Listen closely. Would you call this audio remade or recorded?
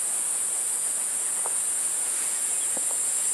remade